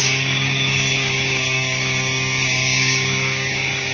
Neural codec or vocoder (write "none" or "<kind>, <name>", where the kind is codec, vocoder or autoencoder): codec, DAC